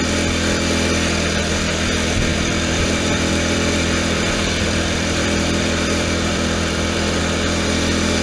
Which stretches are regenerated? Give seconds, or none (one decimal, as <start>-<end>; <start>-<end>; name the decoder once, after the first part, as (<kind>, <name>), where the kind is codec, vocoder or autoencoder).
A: 2.3-7.2 (vocoder, BigVGAN v2)